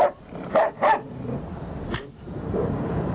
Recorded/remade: remade